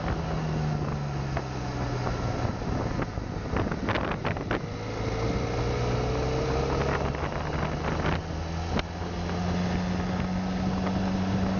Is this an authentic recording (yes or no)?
yes